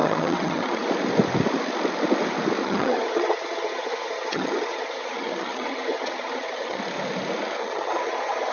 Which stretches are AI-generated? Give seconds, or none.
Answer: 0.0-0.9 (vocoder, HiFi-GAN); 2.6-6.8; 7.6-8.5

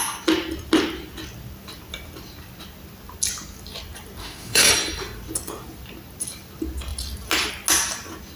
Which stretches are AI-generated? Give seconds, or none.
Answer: 4.2-4.7 (autoencoder, DAC-VAE)

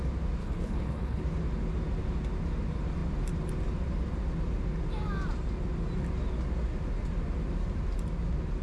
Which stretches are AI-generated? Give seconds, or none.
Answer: 0.4-1.2 (codec, HILCodec)

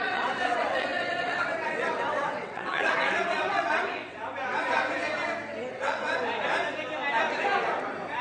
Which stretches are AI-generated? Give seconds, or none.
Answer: 0.0-4.2 (vocoder, WaveNeXt); 5.7-6.2